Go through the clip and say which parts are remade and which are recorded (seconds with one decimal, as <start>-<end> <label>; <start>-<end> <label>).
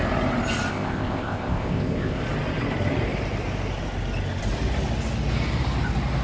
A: 0.0-0.7 recorded; 0.7-2.2 remade; 2.2-6.2 recorded